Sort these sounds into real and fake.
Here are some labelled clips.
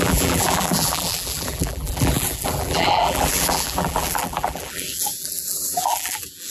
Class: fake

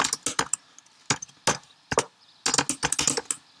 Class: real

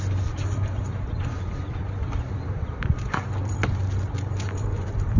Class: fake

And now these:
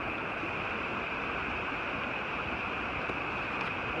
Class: real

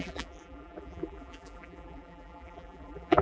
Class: fake